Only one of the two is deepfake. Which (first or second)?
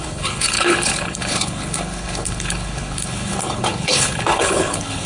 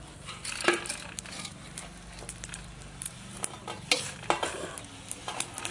first